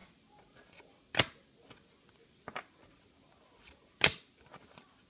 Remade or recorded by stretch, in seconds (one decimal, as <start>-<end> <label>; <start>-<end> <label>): 0.0-5.1 recorded